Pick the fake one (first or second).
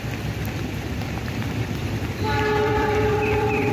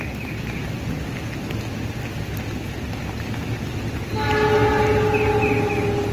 first